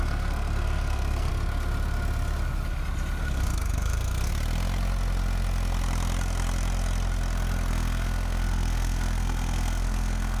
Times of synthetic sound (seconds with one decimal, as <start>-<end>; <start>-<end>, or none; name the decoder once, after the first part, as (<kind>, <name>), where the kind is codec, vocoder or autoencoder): 0.0-1.3 (codec, SNAC); 3.2-4.3; 7.7-10.4